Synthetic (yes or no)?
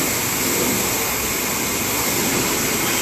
no